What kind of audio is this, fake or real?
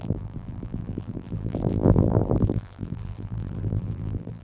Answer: fake